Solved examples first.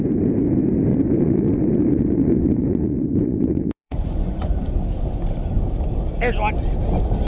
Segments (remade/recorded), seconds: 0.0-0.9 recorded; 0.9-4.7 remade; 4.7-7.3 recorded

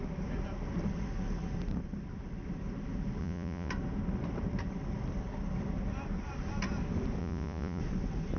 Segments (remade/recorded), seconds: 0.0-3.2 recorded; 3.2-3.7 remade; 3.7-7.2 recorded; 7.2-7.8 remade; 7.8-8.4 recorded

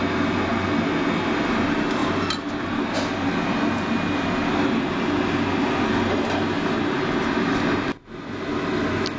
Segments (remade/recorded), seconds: 0.0-9.2 recorded